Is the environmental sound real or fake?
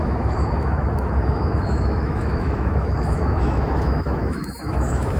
fake